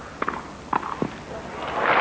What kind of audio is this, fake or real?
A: real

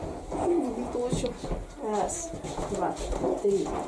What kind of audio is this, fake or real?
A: real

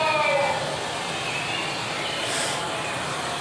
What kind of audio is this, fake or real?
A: real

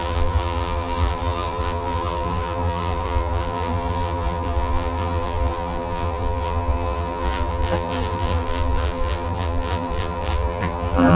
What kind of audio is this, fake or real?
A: fake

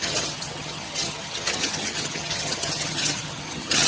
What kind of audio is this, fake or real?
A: fake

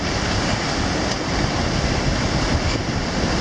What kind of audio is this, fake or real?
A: real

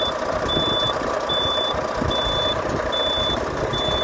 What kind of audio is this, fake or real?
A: real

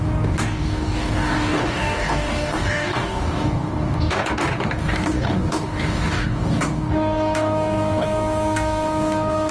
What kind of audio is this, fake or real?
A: fake